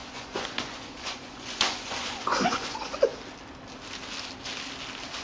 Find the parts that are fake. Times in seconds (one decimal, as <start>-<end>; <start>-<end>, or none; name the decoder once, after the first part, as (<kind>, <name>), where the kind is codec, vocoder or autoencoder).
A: 0.0-3.1 (vocoder, Vocos)